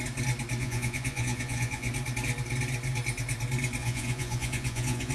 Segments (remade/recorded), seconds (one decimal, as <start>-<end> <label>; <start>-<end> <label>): 0.0-0.6 recorded; 0.6-1.9 remade; 1.9-3.8 recorded; 3.8-5.1 remade